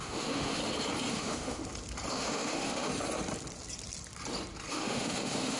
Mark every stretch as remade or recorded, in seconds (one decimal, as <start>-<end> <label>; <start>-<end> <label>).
0.0-0.6 remade; 0.6-1.1 recorded; 1.1-1.6 remade; 1.6-2.1 recorded; 2.1-2.9 remade; 2.9-4.7 recorded; 4.7-5.6 remade